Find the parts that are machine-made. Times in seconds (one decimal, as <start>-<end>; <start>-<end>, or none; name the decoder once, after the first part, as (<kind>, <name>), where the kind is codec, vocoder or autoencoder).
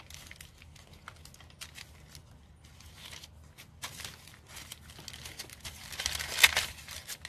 none